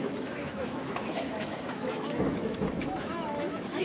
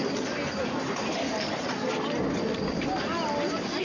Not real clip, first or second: first